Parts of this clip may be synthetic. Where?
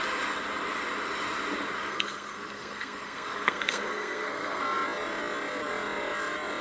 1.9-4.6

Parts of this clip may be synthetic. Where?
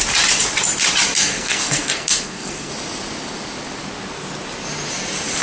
1.2-2.7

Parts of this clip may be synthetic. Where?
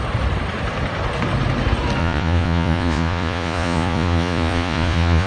2.0-5.3